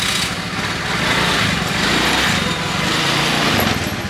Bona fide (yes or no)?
yes